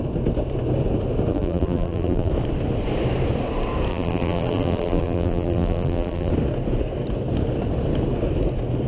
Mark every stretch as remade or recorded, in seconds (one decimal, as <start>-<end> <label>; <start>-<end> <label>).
0.0-1.3 recorded; 1.3-2.3 remade; 2.3-3.9 recorded; 3.9-6.3 remade; 6.3-8.9 recorded